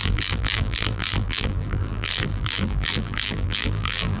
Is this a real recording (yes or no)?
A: no